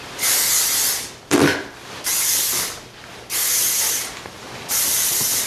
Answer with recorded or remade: remade